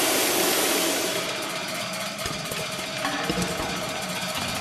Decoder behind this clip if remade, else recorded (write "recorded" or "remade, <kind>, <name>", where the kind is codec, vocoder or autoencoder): recorded